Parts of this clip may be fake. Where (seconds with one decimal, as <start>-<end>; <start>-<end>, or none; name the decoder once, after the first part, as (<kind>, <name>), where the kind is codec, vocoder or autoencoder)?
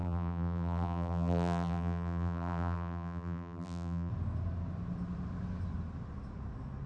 0.0-4.1 (vocoder, BigVGAN v2)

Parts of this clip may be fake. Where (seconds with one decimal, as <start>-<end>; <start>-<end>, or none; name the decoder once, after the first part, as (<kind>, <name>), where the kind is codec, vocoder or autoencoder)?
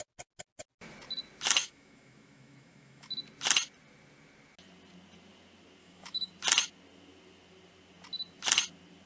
1.6-3.1 (autoencoder, DAC-VAE); 5.8-6.3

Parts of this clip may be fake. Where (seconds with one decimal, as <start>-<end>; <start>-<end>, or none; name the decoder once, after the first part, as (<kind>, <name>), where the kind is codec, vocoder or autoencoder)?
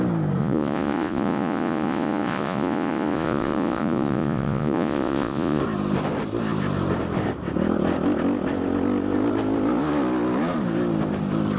0.4-5.6 (vocoder, Vocos)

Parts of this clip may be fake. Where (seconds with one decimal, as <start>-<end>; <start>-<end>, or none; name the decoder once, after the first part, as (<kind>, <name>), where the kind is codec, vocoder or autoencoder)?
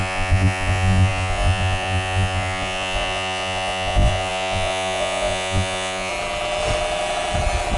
0.0-6.1 (vocoder, Vocos)